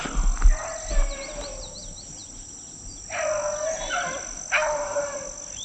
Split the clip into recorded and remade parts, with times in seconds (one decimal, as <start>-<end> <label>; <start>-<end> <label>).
0.0-5.6 recorded